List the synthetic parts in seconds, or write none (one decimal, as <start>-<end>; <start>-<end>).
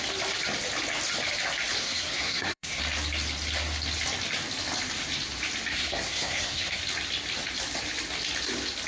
1.8-2.8; 5.7-6.8